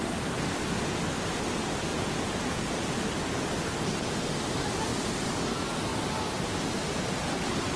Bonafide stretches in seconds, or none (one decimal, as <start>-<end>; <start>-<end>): 0.0-1.9; 2.8-7.8